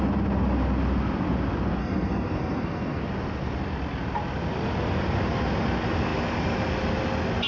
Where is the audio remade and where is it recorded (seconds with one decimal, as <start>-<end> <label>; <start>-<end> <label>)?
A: 0.0-1.8 recorded; 1.8-3.0 remade; 3.0-7.5 recorded